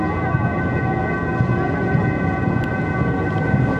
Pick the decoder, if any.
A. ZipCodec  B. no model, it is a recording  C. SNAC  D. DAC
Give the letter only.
B